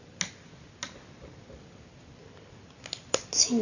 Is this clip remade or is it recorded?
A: recorded